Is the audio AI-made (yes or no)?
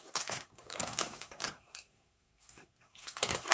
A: yes